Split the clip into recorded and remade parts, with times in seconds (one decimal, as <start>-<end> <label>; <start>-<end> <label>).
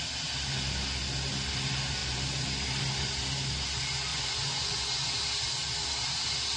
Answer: 0.0-4.1 recorded; 4.1-5.1 remade; 5.1-6.6 recorded